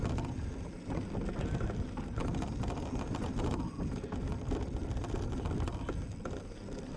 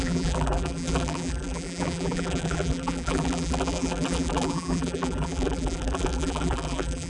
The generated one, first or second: second